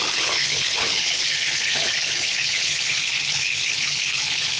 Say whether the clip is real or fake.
fake